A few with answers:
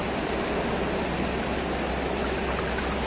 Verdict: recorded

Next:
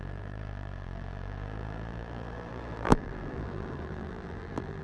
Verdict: remade